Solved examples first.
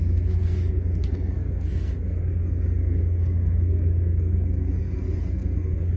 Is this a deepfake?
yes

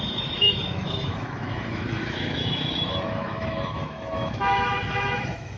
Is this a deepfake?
yes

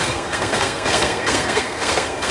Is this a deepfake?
yes